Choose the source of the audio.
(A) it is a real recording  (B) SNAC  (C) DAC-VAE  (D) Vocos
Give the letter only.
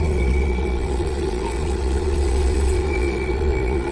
D